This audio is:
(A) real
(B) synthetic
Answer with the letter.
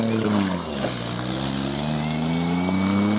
A